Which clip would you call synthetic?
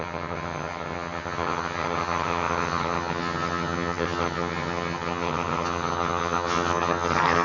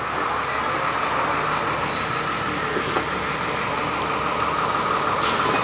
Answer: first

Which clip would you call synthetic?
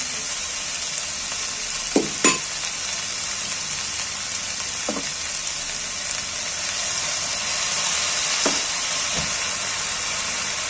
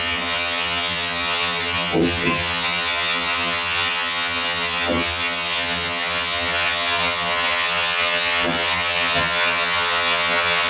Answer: second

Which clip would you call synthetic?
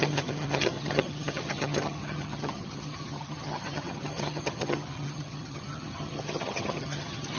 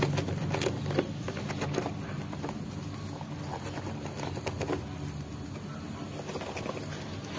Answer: first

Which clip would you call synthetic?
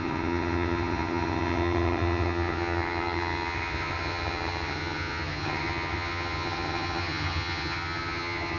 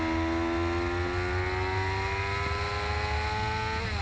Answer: first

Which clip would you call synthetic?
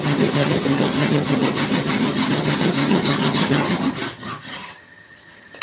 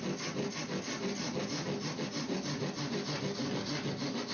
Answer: first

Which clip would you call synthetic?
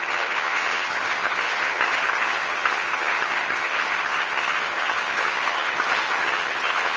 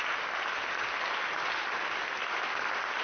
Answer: first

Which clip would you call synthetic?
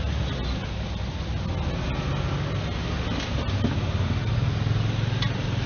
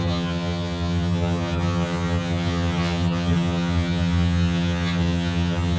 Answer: second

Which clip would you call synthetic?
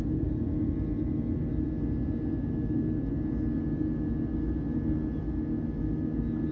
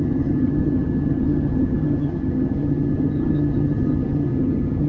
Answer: second